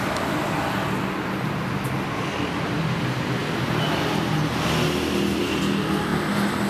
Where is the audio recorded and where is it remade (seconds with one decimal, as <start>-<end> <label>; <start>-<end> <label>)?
0.0-6.7 recorded